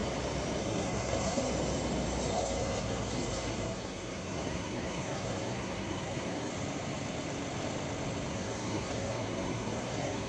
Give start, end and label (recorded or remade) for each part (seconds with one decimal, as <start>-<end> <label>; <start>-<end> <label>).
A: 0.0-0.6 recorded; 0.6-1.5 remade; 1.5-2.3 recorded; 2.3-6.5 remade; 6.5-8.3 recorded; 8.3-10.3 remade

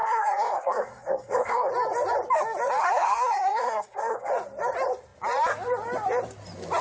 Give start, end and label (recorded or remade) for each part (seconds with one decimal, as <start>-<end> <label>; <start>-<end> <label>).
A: 0.0-1.7 remade; 1.7-2.8 recorded; 2.8-4.3 remade; 4.3-6.8 recorded

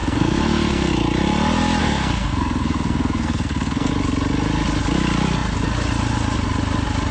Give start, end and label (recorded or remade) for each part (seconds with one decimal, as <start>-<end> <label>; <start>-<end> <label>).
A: 0.0-0.9 remade; 0.9-1.8 recorded; 1.8-3.9 remade; 3.9-7.1 recorded

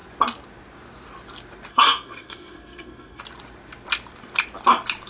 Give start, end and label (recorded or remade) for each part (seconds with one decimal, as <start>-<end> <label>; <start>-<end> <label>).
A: 0.0-1.7 recorded; 1.7-3.2 remade; 3.2-5.1 recorded

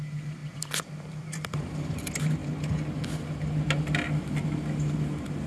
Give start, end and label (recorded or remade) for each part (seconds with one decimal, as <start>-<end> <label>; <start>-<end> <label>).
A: 0.0-5.5 recorded